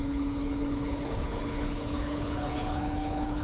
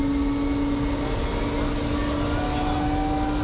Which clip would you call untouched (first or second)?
second